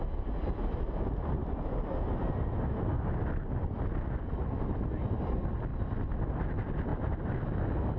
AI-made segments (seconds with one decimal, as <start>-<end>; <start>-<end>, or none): none